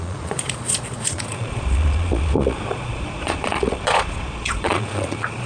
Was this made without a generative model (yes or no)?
no